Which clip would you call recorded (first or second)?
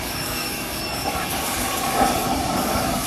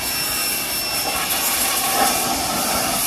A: second